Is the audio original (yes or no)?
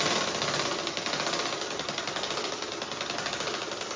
yes